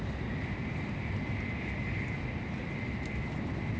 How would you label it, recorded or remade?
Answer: recorded